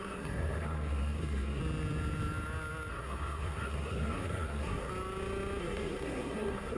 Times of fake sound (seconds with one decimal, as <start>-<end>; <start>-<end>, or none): 0.0-1.6; 2.9-4.9; 5.6-6.8